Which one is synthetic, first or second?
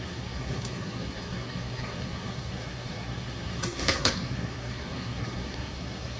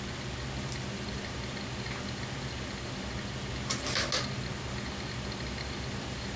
first